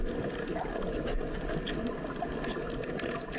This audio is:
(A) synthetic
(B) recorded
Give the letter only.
B